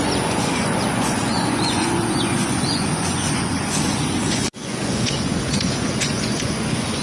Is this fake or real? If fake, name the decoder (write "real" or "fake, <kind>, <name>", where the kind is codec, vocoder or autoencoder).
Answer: fake, vocoder, Vocos